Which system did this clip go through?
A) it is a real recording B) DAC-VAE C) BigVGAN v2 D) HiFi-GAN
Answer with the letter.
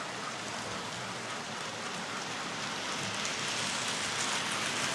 A